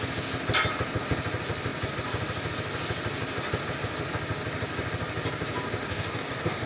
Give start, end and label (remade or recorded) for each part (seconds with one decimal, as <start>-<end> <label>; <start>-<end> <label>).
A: 0.0-5.9 recorded; 5.9-6.7 remade